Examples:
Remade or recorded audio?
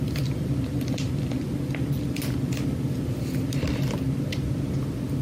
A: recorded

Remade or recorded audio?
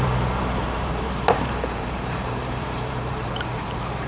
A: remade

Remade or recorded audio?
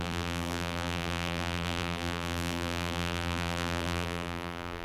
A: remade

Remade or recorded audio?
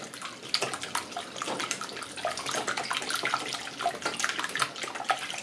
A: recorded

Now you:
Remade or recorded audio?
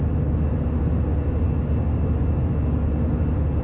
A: recorded